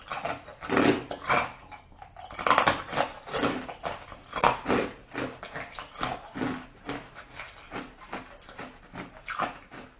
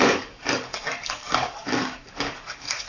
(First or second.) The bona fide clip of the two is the first